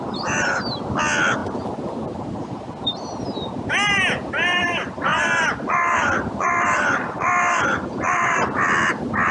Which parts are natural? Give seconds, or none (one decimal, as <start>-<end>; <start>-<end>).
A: 0.0-9.3